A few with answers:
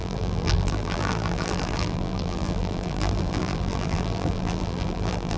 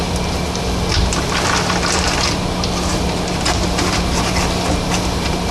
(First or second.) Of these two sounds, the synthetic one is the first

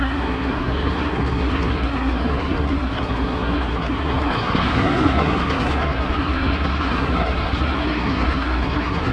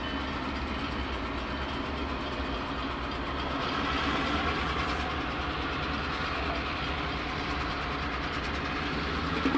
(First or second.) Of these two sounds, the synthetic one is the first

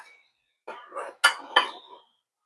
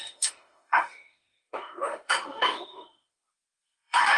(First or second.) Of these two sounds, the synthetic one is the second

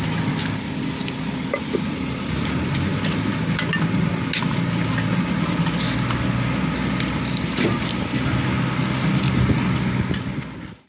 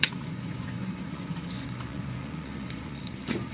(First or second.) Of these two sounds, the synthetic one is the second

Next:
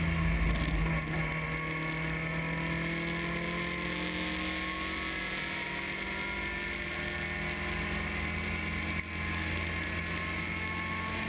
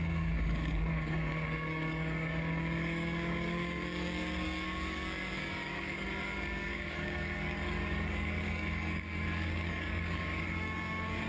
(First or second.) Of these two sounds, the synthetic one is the second